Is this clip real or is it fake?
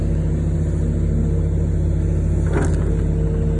real